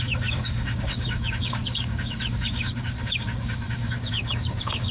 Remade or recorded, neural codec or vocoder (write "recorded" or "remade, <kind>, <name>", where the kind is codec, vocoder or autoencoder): remade, codec, DAC